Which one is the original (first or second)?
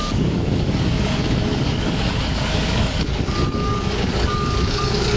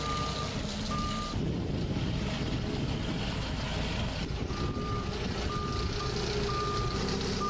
second